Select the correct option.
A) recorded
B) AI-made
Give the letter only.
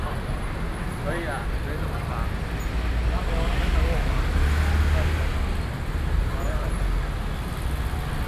A